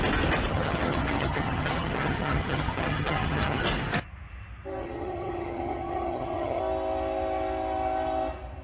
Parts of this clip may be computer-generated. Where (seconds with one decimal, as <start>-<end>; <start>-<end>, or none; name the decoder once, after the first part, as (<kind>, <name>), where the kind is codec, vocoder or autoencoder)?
0.5-3.6 (vocoder, HiFi-GAN); 4.8-6.6